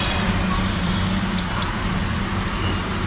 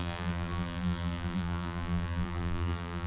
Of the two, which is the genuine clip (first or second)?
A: first